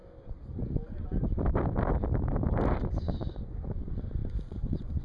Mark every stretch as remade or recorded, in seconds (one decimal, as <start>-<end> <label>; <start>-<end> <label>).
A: 0.0-3.0 recorded; 3.0-5.0 remade